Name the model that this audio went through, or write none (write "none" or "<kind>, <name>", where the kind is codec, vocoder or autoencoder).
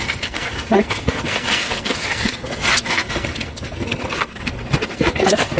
codec, SNAC